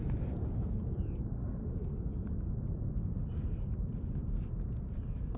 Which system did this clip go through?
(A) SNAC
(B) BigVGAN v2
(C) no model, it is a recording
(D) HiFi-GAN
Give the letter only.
C